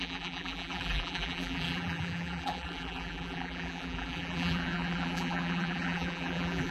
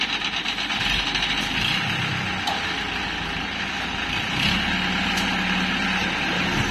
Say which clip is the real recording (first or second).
second